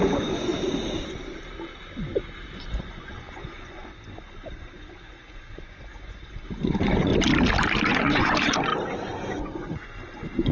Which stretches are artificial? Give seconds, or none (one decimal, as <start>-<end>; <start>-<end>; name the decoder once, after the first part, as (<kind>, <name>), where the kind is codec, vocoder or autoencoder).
0.0-0.5 (vocoder, Vocos); 2.5-7.1; 8.0-8.7; 9.3-10.5